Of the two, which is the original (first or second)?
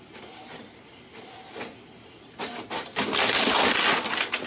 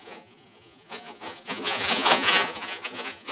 first